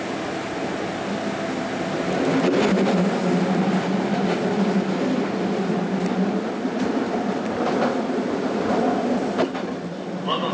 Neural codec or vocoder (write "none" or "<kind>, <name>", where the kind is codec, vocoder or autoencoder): none